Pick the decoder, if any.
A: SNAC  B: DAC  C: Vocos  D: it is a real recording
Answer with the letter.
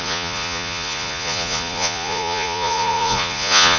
C